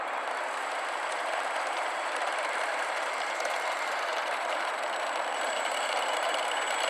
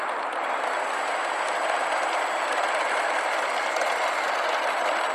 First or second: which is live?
second